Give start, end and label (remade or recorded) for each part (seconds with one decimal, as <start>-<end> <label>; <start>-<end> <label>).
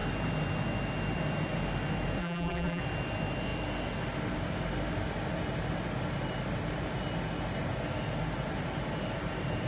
0.0-2.2 recorded; 2.2-2.8 remade; 2.8-9.7 recorded